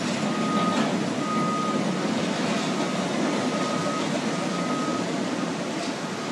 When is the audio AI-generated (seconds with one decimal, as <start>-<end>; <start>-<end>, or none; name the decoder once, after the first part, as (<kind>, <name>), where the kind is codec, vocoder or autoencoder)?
3.8-4.5 (vocoder, BigVGAN v2); 4.9-5.6